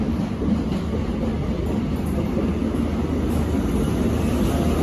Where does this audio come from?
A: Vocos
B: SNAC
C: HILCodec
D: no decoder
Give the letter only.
D